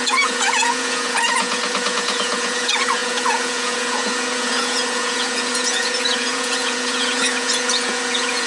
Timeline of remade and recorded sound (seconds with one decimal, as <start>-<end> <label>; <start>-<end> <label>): 0.0-8.5 remade